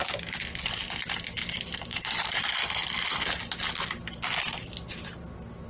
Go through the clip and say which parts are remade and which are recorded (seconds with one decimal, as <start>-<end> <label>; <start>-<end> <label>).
0.0-1.9 recorded; 1.9-2.4 remade; 2.4-5.7 recorded